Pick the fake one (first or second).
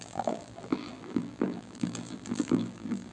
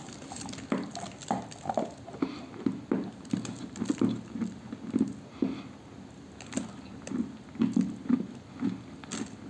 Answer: first